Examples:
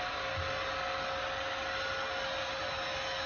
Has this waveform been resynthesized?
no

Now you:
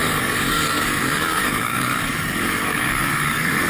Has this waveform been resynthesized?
yes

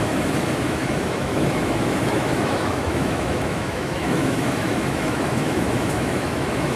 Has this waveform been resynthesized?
yes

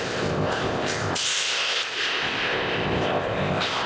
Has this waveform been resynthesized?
yes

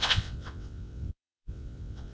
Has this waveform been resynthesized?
yes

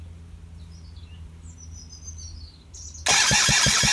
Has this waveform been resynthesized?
no